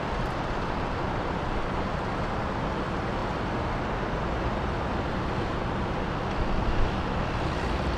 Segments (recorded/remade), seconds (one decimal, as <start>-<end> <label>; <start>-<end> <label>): 0.0-8.0 recorded